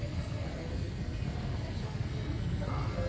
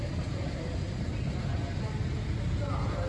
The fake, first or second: first